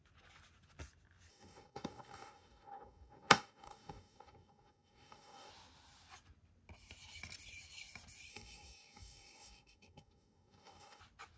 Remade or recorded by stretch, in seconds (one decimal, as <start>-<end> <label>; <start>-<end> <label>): 0.0-1.3 recorded; 1.3-5.5 remade; 5.5-8.3 recorded; 8.3-11.0 remade; 11.0-11.4 recorded

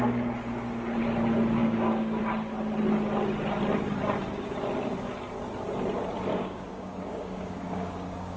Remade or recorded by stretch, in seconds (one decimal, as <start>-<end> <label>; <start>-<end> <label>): 0.0-1.6 recorded; 1.6-2.2 remade; 2.2-6.3 recorded; 6.3-8.4 remade

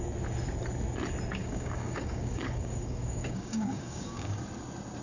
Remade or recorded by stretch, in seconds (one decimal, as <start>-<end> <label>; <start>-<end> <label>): 0.0-1.4 recorded; 1.4-4.4 remade; 4.4-5.0 recorded

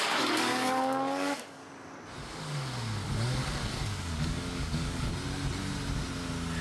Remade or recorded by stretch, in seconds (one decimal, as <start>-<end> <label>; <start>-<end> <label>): 0.0-1.6 remade; 1.6-2.2 recorded; 2.2-5.1 remade; 5.1-6.6 recorded